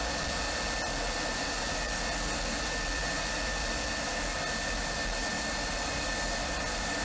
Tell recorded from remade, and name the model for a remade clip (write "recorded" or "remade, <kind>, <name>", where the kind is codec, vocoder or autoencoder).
recorded